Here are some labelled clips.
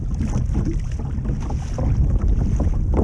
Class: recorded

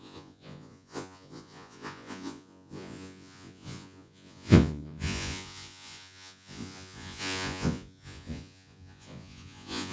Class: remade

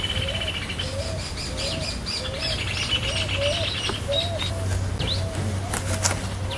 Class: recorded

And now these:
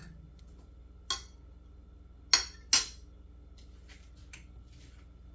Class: recorded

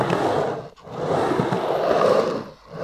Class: recorded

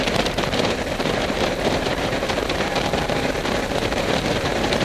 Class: remade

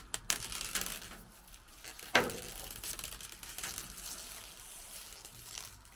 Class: recorded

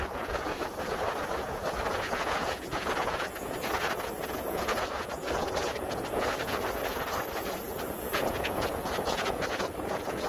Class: remade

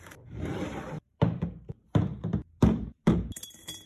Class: remade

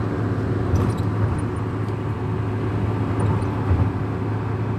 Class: recorded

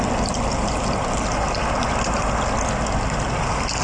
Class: recorded